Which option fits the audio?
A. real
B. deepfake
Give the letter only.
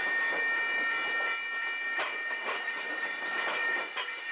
A